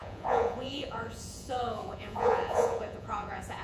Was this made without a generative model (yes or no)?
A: no